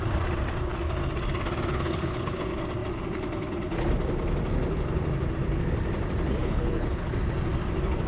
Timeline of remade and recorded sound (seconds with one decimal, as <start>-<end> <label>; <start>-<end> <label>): 0.0-1.7 recorded; 1.7-2.4 remade; 2.4-6.4 recorded; 6.4-7.1 remade; 7.1-8.1 recorded